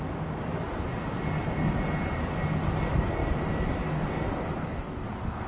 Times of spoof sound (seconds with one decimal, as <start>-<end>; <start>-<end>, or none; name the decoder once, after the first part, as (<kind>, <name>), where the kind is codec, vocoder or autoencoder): none